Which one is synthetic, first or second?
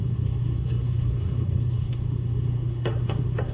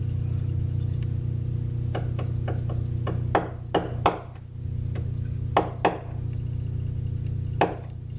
first